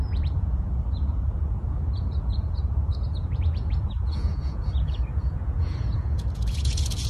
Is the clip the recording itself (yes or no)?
no